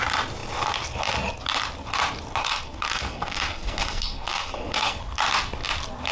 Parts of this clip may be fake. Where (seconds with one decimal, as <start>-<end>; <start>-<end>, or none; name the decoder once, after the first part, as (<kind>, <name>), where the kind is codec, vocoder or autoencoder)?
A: 2.4-5.0 (codec, SNAC)